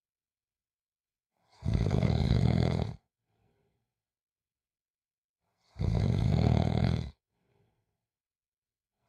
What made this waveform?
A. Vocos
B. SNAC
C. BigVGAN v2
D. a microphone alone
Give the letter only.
B